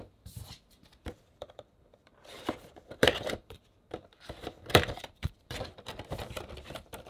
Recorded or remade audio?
remade